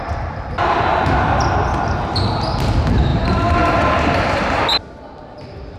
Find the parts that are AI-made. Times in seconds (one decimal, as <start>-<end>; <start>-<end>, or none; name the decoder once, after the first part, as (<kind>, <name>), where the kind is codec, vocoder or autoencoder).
0.6-1.1 (vocoder, BigVGAN v2); 3.1-4.6